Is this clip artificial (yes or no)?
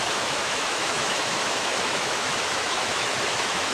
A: yes